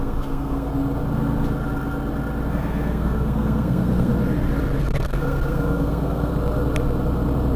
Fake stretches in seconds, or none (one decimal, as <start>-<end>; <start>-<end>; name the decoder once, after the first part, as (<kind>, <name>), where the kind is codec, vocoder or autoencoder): 0.0-0.7 (codec, SNAC); 2.5-4.1; 4.8-6.3